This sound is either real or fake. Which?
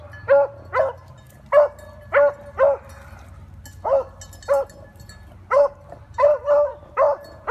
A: real